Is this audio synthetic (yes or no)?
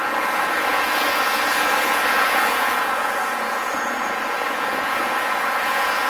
yes